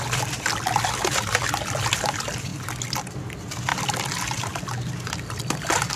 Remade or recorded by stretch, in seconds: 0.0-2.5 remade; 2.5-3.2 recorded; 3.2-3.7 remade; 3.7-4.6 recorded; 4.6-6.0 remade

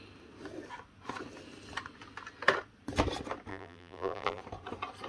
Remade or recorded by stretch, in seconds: 0.0-3.5 recorded; 3.5-4.4 remade; 4.4-5.1 recorded

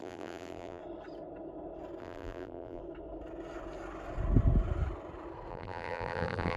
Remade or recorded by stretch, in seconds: 0.0-0.8 remade; 0.8-2.0 recorded; 2.0-2.8 remade; 2.8-5.5 recorded; 5.5-6.6 remade

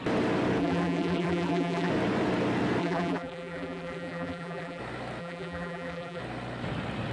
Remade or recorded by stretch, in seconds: 0.0-0.6 recorded; 0.6-1.9 remade; 1.9-2.8 recorded; 2.8-4.8 remade; 4.8-5.2 recorded; 5.2-6.2 remade; 6.2-7.1 recorded

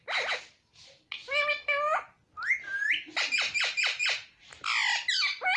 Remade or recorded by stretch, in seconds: 0.0-5.6 recorded

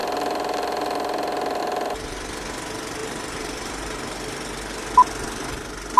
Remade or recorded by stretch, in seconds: 0.0-3.0 recorded; 3.0-4.0 remade; 4.0-6.0 recorded

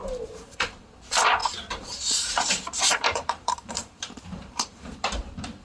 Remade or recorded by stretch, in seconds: 0.0-0.7 remade; 0.7-1.4 recorded; 1.4-4.8 remade; 4.8-5.6 recorded

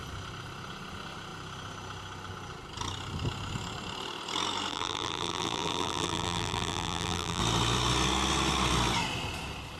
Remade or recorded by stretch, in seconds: 0.0-4.7 recorded; 4.7-7.4 remade; 7.4-9.8 recorded